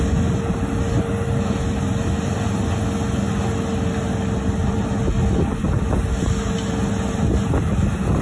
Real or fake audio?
real